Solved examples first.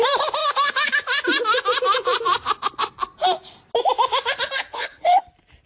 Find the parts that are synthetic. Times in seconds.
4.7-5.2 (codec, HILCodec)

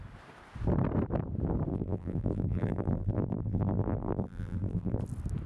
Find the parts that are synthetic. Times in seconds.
1.7-5.0 (vocoder, BigVGAN v2)